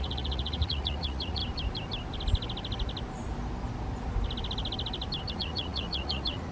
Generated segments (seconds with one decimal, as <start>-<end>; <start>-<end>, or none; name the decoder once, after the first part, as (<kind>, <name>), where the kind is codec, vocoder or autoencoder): 0.0-1.4 (vocoder, Vocos); 5.3-6.5